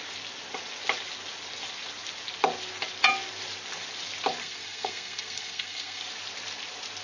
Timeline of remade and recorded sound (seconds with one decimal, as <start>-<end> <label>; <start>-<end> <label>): 0.0-4.4 recorded; 4.4-6.0 remade; 6.0-7.0 recorded